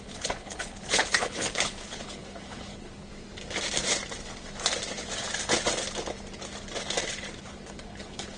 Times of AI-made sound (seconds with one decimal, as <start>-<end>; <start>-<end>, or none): 0.0-3.1; 7.4-8.4